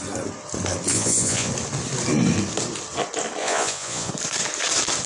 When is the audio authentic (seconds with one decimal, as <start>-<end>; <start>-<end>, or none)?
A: 0.0-0.9; 1.5-3.4; 4.1-5.1